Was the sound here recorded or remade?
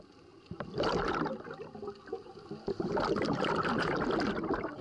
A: recorded